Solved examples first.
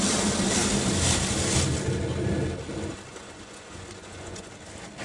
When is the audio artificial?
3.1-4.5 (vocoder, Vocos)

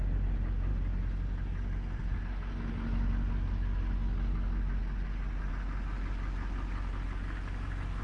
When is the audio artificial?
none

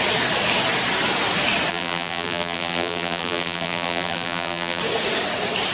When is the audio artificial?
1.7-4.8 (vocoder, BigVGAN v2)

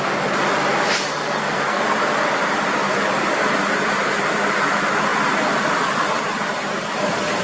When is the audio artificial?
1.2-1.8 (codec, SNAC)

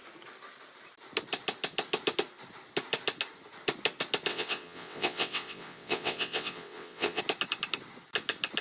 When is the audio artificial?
4.3-7.2 (vocoder, WaveNeXt)